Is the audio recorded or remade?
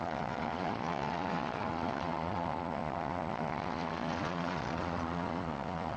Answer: remade